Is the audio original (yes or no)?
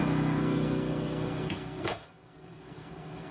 no